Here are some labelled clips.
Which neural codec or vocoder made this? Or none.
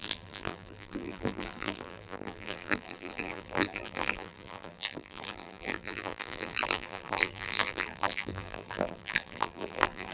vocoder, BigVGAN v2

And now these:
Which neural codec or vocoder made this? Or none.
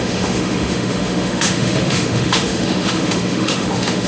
autoencoder, DAC-VAE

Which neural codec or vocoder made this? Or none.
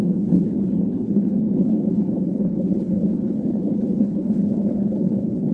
codec, HILCodec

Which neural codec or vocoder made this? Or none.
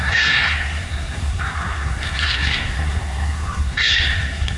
codec, SNAC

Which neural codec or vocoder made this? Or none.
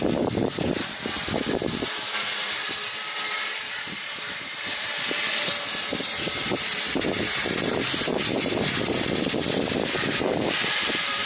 vocoder, BigVGAN v2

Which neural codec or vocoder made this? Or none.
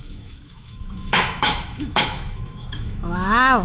autoencoder, DAC-VAE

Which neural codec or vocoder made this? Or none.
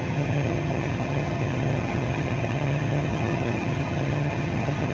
vocoder, HiFi-GAN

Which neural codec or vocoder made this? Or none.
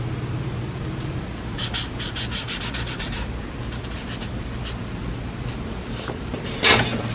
none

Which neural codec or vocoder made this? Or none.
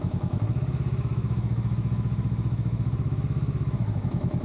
autoencoder, DAC-VAE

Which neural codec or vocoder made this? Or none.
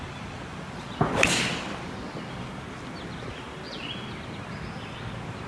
none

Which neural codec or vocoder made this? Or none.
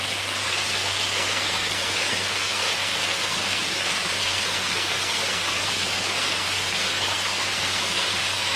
codec, SNAC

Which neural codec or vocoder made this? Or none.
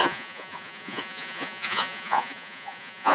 vocoder, Vocos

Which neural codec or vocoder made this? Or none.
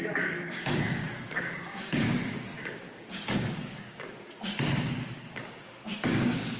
codec, DAC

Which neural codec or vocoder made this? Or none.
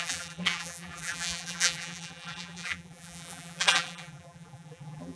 vocoder, BigVGAN v2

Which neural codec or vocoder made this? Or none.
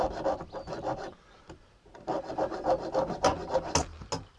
none